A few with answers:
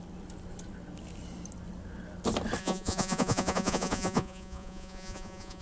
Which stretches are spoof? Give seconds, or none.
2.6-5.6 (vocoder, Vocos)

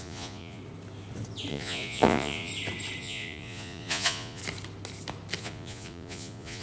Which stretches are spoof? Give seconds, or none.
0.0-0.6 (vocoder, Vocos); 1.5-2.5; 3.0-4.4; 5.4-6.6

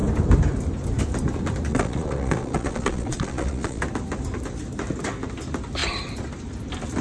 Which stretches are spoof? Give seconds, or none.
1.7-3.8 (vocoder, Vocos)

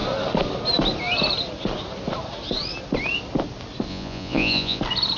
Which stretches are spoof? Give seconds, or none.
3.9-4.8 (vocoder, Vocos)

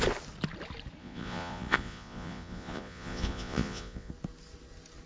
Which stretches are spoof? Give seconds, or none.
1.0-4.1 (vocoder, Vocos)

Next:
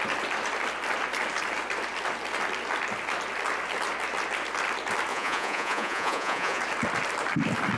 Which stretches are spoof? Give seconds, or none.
5.1-6.6 (vocoder, Vocos)

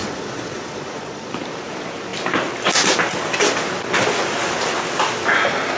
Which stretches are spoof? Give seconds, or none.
0.0-1.3 (vocoder, Vocos)